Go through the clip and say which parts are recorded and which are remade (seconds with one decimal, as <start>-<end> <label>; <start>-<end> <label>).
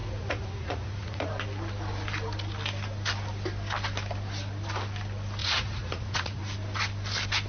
0.0-1.3 remade; 1.3-5.4 recorded; 5.4-6.4 remade; 6.4-7.5 recorded